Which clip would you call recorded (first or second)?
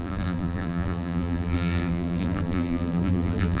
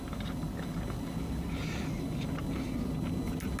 second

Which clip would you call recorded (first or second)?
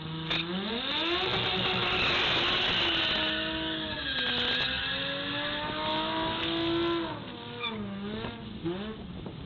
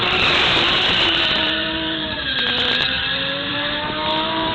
first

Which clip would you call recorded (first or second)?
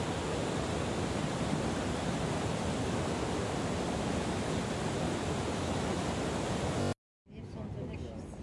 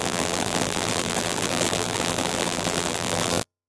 first